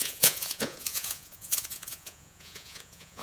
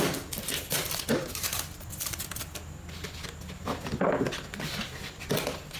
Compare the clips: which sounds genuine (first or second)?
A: second